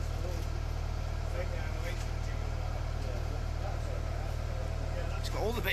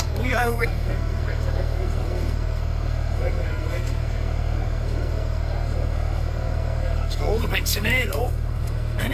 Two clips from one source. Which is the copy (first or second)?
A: second